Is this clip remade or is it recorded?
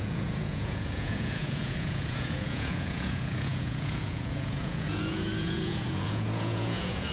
remade